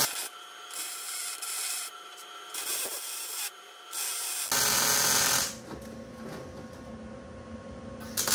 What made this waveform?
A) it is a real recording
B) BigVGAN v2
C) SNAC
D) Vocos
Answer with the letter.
A